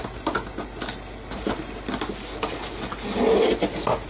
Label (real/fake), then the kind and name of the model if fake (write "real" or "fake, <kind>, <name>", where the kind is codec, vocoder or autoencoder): real